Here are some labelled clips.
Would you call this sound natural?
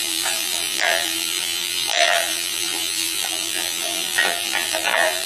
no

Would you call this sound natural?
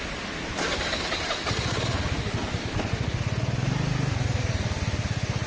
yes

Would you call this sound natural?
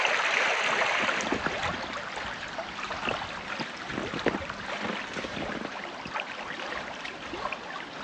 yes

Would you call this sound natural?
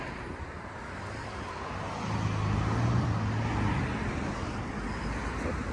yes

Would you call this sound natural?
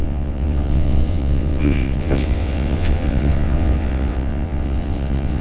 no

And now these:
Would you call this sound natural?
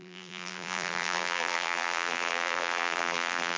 no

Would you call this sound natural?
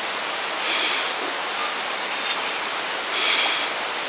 yes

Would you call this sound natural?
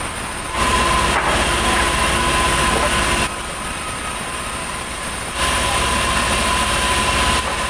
yes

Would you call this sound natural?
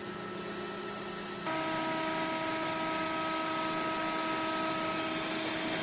yes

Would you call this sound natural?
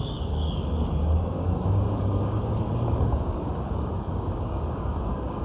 no